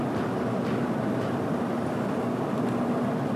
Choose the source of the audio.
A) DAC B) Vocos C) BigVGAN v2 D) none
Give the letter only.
D